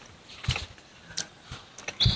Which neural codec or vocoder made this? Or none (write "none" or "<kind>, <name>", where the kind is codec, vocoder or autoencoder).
none